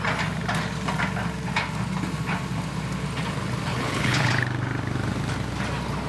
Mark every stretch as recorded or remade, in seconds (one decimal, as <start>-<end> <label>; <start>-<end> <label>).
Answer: 0.0-3.7 recorded; 3.7-4.3 remade; 4.3-6.1 recorded